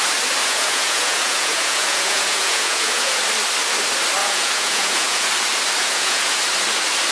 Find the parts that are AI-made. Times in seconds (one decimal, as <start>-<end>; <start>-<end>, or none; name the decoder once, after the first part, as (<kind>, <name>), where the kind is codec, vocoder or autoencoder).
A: 0.4-3.2 (vocoder, Vocos); 4.2-5.3; 5.8-6.4